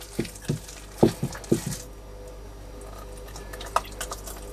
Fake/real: real